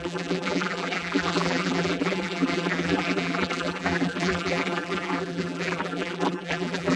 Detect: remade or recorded remade